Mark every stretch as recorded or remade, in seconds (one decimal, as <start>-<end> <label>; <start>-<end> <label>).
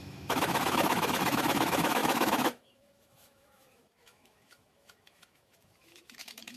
0.0-6.6 remade